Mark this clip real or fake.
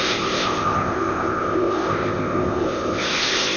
fake